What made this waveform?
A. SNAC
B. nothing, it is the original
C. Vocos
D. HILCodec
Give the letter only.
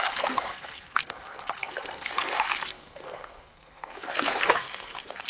A